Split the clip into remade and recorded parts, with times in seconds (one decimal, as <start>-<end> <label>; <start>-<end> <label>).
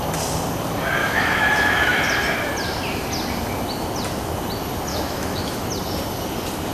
0.0-1.0 recorded; 1.0-2.0 remade; 2.0-4.9 recorded; 4.9-5.7 remade; 5.7-6.7 recorded